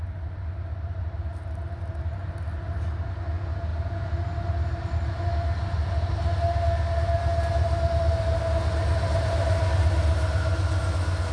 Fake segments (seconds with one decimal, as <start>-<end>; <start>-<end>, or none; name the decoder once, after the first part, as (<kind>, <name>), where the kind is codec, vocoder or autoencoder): none